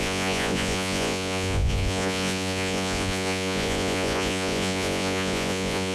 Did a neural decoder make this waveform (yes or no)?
yes